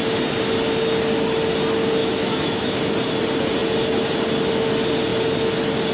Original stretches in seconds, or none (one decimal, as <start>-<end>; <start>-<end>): 0.0-2.0; 2.7-5.9